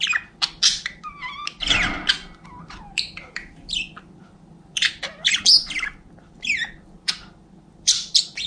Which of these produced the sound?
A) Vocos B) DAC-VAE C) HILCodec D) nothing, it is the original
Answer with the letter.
D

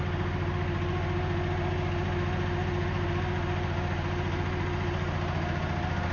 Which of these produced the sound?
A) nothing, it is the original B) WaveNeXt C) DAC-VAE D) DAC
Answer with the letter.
A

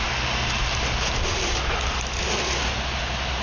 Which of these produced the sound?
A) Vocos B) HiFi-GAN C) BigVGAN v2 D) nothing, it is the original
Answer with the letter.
D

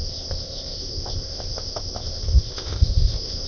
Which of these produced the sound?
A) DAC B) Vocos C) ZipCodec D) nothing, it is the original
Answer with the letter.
C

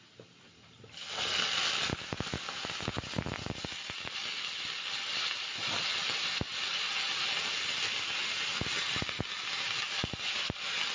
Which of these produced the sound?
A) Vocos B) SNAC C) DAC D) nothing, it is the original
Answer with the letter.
D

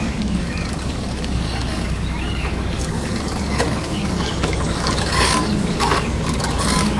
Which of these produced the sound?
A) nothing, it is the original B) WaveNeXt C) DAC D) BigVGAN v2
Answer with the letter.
C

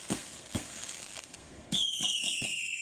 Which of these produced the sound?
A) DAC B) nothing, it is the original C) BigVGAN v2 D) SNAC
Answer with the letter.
D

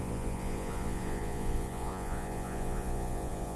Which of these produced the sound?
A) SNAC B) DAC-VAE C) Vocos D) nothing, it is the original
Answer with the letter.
C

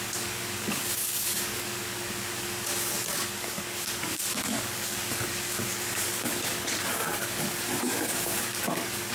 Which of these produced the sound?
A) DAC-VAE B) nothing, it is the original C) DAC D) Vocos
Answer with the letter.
C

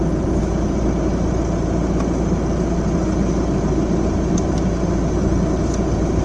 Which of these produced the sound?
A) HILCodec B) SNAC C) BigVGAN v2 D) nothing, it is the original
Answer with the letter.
D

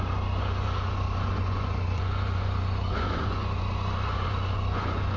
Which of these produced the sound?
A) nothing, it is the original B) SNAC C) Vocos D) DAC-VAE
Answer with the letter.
C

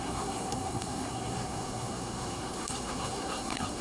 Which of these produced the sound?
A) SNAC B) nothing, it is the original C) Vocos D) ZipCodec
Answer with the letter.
A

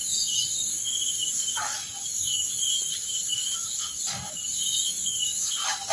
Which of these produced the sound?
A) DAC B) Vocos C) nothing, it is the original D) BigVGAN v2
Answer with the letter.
A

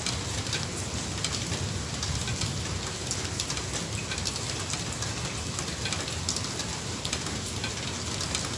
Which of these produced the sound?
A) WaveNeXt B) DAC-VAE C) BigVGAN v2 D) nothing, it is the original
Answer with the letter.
D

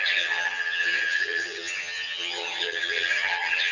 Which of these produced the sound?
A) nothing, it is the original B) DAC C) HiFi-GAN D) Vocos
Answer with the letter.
C